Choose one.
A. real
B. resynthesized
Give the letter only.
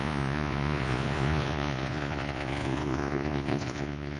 B